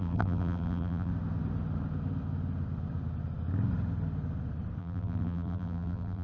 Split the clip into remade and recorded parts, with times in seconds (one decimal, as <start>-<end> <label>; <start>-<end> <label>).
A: 0.0-1.1 remade; 1.1-4.8 recorded; 4.8-6.2 remade